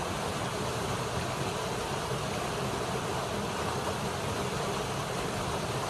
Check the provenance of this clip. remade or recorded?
recorded